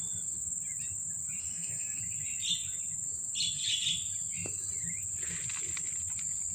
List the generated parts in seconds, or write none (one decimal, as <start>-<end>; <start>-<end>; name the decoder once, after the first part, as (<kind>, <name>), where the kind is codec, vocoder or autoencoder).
1.4-2.0 (codec, SNAC)

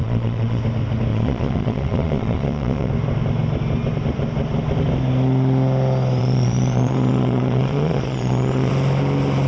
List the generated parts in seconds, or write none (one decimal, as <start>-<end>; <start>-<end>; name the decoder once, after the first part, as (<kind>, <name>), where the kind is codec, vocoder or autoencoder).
0.0-0.6 (vocoder, Vocos); 1.1-2.9; 6.2-8.7

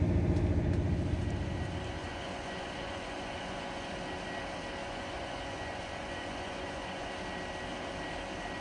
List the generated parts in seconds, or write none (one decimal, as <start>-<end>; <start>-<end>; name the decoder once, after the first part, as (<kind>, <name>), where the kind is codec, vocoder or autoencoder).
2.0-3.9 (vocoder, Vocos); 4.8-7.1

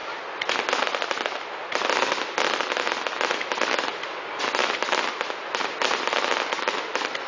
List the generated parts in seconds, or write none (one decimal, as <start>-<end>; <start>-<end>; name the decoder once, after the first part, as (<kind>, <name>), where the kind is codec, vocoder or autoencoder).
none

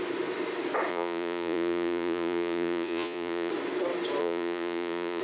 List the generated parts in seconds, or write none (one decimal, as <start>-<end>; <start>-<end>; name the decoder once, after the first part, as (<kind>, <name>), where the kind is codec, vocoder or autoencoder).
0.9-3.5 (vocoder, Vocos); 4.2-5.2

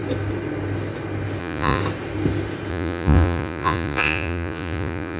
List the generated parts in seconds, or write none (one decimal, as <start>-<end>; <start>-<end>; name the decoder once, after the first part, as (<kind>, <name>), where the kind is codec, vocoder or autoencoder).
1.4-1.8 (vocoder, Vocos); 2.7-5.2

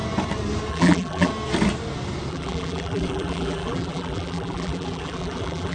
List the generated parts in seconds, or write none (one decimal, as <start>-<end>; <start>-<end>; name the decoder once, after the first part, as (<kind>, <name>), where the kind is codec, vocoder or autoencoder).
0.7-1.3 (vocoder, BigVGAN v2); 2.3-5.7